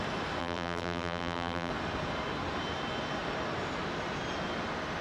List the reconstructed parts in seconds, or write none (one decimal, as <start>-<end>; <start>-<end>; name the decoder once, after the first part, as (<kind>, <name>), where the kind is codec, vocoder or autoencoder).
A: 0.4-1.7 (vocoder, BigVGAN v2)